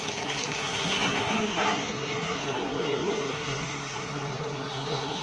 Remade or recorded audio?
remade